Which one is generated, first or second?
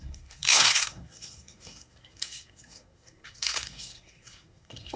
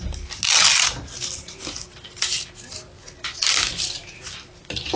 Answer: first